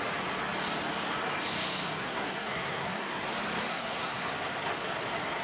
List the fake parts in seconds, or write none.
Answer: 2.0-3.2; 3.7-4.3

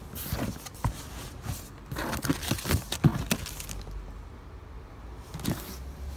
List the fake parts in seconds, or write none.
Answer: none

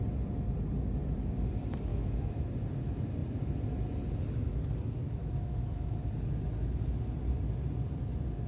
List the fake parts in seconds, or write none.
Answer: 1.9-2.4; 5.2-5.9

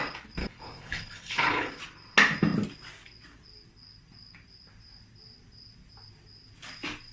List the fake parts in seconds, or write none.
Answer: 0.4-1.8

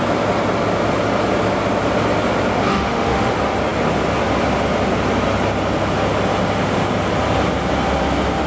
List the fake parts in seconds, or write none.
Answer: 2.7-3.3

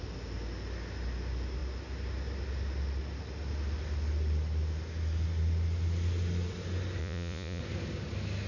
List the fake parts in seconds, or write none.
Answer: 7.0-7.6